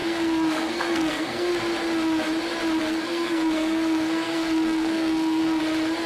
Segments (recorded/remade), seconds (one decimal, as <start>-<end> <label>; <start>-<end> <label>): 0.0-1.5 remade; 1.5-2.8 recorded; 2.8-5.6 remade; 5.6-6.1 recorded